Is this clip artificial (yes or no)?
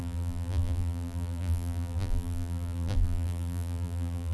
yes